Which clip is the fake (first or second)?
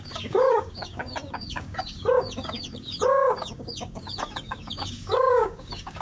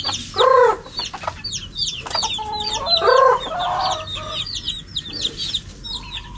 first